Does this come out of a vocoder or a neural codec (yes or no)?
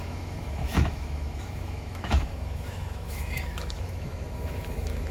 yes